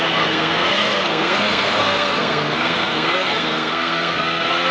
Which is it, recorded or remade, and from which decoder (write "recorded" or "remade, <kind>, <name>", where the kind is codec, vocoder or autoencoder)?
remade, codec, SNAC